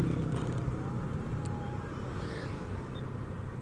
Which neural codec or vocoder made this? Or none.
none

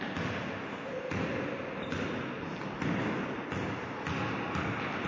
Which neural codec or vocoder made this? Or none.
none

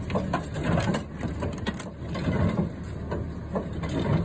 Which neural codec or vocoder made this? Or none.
none